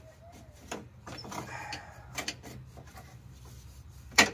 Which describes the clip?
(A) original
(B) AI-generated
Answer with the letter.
B